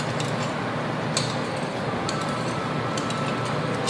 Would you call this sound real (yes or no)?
yes